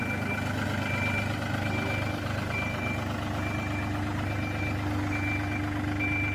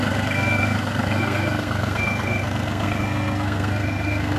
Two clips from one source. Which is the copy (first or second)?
second